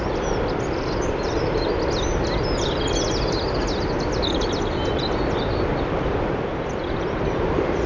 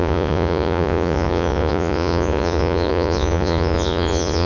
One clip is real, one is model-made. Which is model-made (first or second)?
second